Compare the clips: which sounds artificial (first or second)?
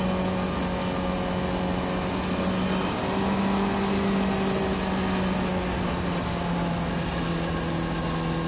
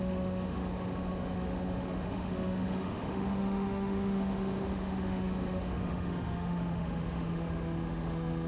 second